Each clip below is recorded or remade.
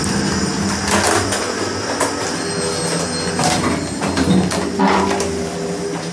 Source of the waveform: recorded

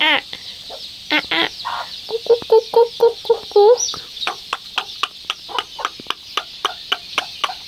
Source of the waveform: recorded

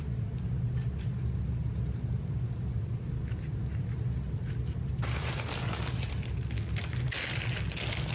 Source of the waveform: recorded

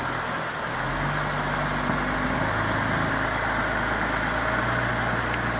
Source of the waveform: recorded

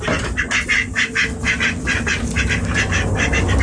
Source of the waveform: recorded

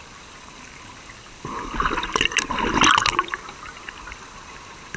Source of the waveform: recorded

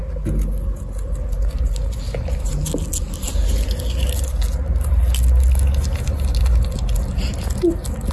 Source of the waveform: recorded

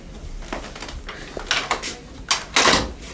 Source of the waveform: recorded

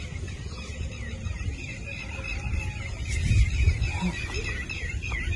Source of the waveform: recorded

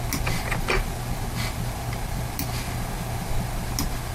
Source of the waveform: recorded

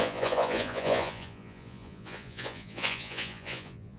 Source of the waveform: remade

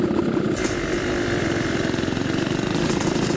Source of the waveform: remade